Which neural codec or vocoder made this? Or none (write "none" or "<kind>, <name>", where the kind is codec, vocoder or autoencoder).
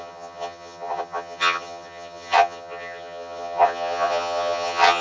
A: vocoder, HiFi-GAN